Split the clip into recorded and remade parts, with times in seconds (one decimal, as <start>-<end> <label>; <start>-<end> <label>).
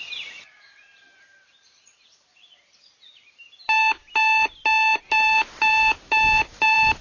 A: 0.0-4.0 remade; 4.0-5.1 recorded; 5.1-7.0 remade